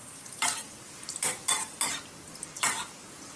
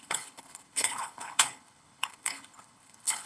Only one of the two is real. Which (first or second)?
first